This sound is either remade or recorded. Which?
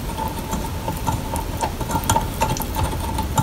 recorded